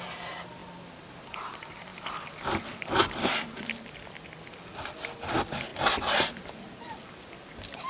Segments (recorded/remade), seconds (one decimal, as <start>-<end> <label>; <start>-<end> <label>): 0.0-7.9 recorded